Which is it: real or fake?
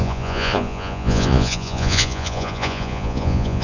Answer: fake